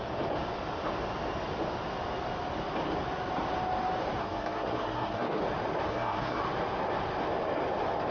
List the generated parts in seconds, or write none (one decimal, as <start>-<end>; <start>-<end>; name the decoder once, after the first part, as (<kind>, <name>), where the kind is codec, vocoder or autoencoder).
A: 4.2-5.4 (codec, SNAC); 5.9-6.4